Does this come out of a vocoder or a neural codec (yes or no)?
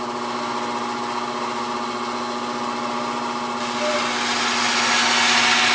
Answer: no